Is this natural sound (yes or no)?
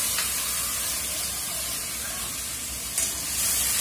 yes